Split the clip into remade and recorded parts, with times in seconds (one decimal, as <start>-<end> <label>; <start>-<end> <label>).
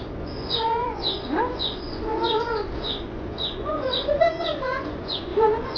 0.0-5.8 remade